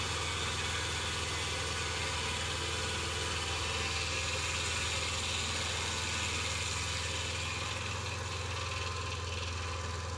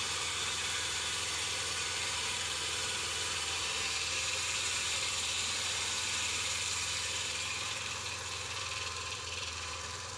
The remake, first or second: second